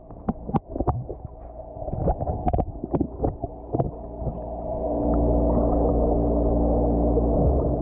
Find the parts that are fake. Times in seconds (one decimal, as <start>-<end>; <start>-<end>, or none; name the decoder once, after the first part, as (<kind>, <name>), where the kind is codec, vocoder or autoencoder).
none

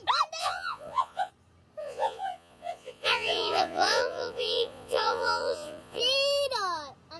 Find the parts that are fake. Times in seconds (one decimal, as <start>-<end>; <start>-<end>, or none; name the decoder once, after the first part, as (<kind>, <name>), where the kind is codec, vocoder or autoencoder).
0.4-1.3 (vocoder, Vocos); 1.8-6.0